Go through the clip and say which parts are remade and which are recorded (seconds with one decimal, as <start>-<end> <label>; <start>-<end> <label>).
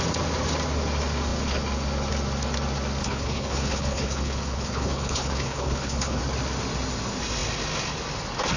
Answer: 0.0-3.0 recorded; 3.0-6.2 remade; 6.2-8.6 recorded